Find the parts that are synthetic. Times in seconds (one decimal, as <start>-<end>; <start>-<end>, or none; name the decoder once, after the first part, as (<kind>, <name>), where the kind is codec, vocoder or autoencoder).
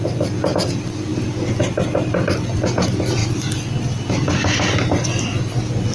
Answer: none